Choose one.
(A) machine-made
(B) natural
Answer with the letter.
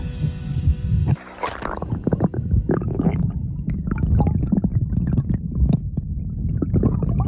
B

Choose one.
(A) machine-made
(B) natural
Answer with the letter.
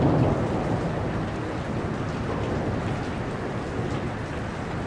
B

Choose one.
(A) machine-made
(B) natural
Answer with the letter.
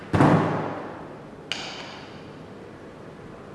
B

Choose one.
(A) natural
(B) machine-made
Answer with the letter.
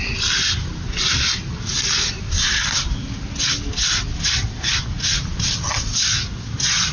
A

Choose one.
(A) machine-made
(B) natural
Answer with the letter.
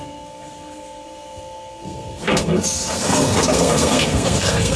A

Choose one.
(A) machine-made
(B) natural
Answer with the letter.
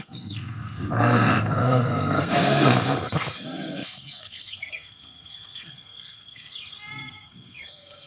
A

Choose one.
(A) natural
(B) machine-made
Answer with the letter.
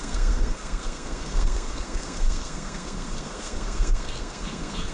B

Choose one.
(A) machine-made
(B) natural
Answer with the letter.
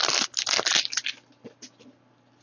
B